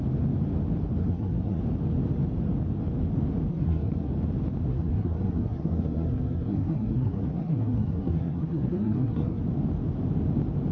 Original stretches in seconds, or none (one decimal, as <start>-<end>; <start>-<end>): 0.0-1.0; 1.6-3.5; 4.1-4.7; 9.4-10.7